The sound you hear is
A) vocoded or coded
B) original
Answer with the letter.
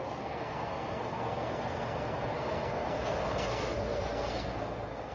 A